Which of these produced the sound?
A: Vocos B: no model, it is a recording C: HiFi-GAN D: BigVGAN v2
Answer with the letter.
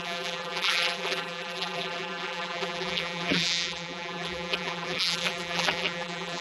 D